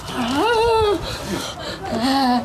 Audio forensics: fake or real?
real